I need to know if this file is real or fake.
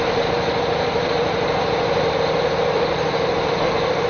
fake